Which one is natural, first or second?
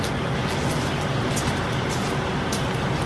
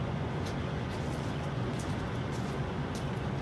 first